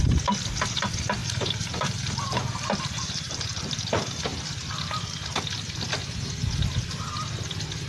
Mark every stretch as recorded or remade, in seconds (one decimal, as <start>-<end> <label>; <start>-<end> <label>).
0.0-1.2 recorded; 1.2-3.7 remade; 3.7-7.9 recorded